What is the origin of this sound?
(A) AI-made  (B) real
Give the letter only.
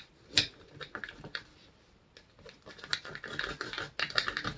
B